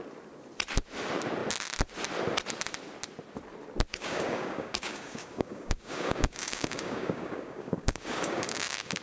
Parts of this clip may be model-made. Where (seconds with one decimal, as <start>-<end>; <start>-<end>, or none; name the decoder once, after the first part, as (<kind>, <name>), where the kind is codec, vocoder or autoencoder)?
3.9-9.0 (codec, DAC)